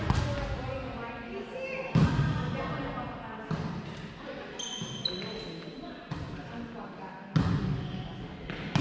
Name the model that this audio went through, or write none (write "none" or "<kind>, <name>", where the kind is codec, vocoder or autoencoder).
none